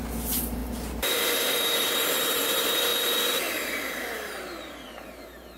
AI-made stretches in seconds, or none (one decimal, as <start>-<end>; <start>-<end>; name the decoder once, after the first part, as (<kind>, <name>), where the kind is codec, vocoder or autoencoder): 0.0-2.9 (vocoder, BigVGAN v2); 3.5-5.6